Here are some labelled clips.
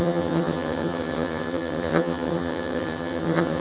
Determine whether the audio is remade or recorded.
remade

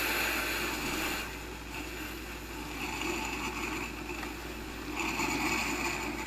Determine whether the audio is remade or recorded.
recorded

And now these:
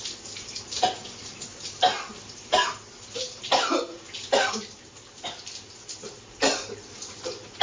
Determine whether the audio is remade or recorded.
recorded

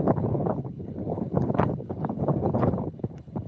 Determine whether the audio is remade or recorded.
remade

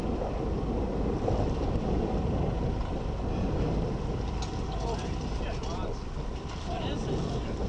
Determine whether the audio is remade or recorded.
recorded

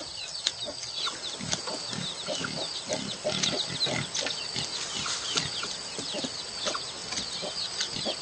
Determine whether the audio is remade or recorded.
recorded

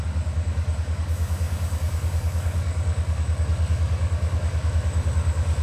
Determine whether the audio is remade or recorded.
remade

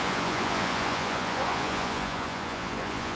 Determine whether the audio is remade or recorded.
remade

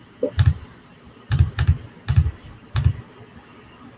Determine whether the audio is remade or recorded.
recorded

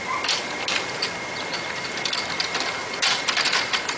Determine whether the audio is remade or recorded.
recorded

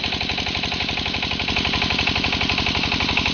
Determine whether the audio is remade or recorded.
recorded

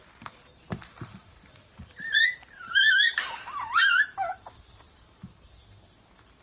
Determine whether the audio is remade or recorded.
remade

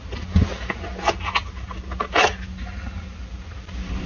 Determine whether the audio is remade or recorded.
recorded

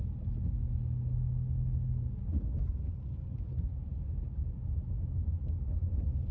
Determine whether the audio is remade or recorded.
recorded